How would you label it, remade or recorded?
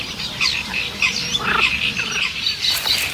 recorded